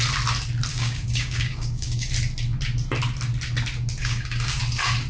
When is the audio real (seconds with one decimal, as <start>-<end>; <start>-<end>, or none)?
0.0-0.7; 2.1-4.0; 4.6-5.1